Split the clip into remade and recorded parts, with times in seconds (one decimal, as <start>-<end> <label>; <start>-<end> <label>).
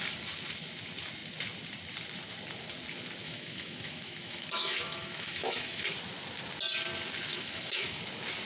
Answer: 0.0-3.2 recorded; 3.2-5.8 remade; 5.8-7.3 recorded; 7.3-8.0 remade; 8.0-8.5 recorded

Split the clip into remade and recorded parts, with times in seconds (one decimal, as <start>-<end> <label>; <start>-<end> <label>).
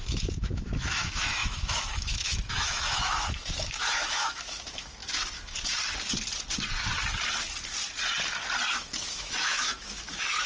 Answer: 0.0-5.0 remade; 5.0-8.7 recorded; 8.7-10.5 remade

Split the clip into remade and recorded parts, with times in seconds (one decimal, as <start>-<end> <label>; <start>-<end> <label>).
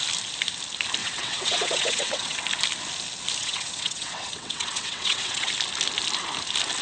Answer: 0.0-1.0 recorded; 1.0-2.4 remade; 2.4-3.4 recorded; 3.4-5.5 remade; 5.5-6.8 recorded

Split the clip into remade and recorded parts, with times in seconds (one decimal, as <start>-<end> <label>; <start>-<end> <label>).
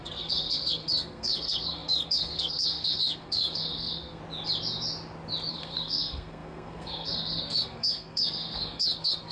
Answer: 0.0-4.2 remade; 4.2-5.5 recorded; 5.5-9.3 remade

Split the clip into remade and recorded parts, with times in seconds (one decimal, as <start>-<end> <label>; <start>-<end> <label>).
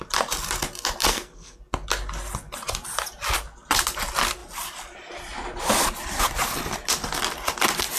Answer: 0.0-1.1 recorded; 1.1-1.6 remade; 1.6-8.0 recorded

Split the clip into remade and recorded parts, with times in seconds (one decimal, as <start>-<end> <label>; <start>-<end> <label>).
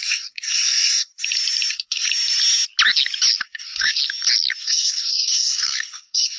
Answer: 0.0-1.1 remade; 1.1-1.7 recorded; 1.7-2.1 remade; 2.1-3.4 recorded; 3.4-4.0 remade; 4.0-4.6 recorded; 4.6-6.4 remade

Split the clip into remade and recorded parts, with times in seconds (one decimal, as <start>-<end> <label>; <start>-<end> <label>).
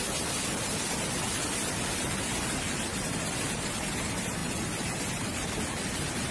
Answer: 0.0-6.3 recorded